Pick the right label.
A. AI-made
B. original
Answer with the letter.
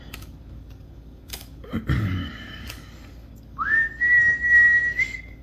A